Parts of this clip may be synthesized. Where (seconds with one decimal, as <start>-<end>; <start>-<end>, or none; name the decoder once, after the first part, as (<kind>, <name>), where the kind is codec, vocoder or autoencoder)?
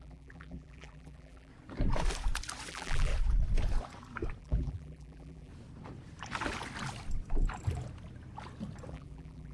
0.0-1.5 (vocoder, BigVGAN v2); 2.7-3.1; 4.4-5.5; 8.9-9.5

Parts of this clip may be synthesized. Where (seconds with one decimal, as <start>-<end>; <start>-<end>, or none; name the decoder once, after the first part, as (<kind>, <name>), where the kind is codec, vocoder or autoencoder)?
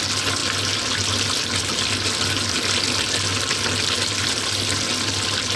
none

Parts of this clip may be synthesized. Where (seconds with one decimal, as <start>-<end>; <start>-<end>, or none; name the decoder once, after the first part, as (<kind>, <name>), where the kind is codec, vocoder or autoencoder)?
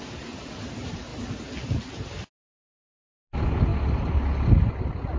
none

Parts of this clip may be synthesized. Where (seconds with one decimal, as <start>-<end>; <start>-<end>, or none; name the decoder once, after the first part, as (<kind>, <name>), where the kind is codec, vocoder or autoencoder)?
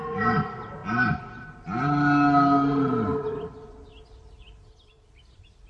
0.0-0.8 (vocoder, BigVGAN v2); 4.2-5.7